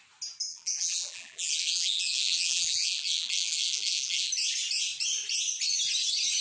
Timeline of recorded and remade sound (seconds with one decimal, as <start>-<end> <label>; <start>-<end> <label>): 0.0-0.5 recorded; 0.5-4.3 remade; 4.3-6.4 recorded